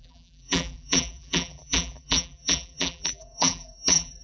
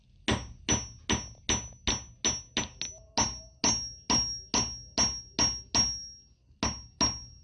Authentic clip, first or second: second